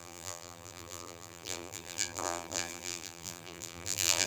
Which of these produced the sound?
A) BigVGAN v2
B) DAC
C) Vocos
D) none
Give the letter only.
A